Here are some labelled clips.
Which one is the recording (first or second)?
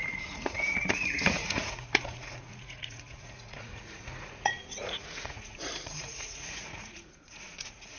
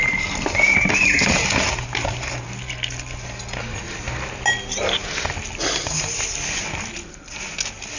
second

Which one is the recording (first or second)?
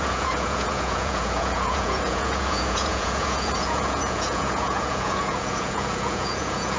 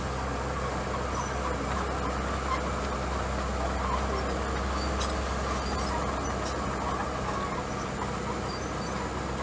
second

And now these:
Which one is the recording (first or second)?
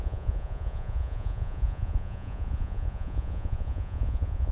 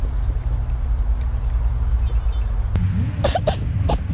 second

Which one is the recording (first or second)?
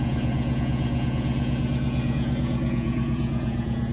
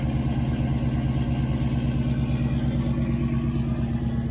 second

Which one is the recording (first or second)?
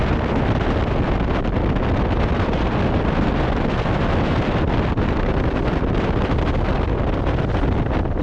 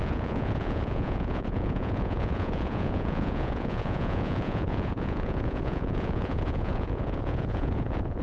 first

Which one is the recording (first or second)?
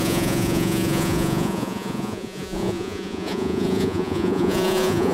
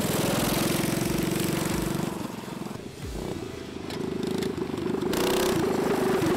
second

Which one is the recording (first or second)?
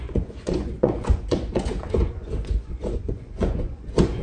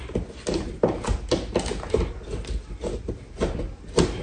second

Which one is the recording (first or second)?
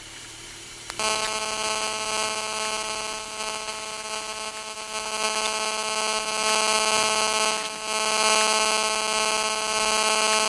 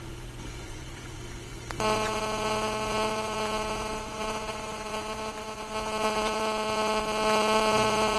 first